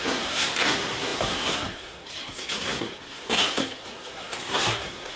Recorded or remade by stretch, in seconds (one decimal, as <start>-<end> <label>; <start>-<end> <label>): 0.0-5.2 remade

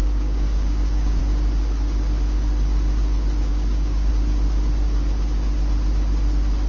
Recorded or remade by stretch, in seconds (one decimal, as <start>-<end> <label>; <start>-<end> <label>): 0.0-1.2 remade; 1.2-3.5 recorded; 3.5-4.1 remade; 4.1-6.7 recorded

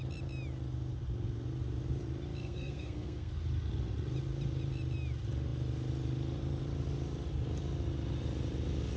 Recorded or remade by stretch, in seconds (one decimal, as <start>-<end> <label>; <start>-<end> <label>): 0.0-2.4 recorded; 2.4-3.3 remade; 3.3-9.0 recorded

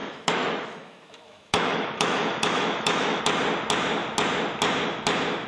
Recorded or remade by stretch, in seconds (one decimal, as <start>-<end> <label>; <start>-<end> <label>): 0.0-3.2 remade; 3.2-5.5 recorded

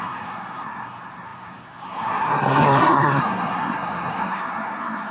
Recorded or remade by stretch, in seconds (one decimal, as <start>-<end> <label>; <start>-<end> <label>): 0.0-5.1 remade

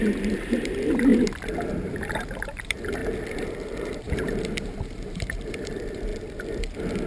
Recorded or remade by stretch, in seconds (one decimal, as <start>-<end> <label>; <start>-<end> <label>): 0.0-1.1 remade; 1.1-1.7 recorded; 1.7-3.0 remade; 3.0-3.5 recorded; 3.5-6.1 remade; 6.1-7.1 recorded

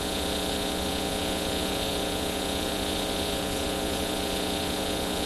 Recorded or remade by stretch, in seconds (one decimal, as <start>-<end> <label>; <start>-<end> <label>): 0.0-5.3 remade